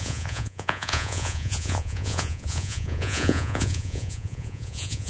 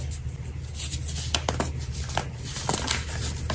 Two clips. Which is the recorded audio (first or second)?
second